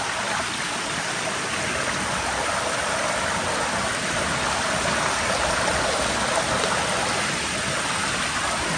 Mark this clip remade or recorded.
recorded